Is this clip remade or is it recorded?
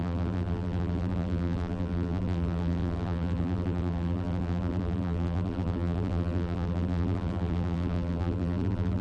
remade